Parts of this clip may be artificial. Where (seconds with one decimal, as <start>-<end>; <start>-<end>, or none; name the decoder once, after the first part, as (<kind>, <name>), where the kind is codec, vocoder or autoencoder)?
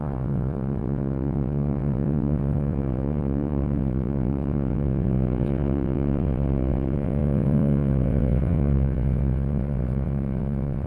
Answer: 0.0-10.9 (vocoder, WaveNeXt)